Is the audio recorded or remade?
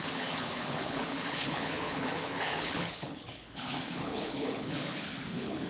remade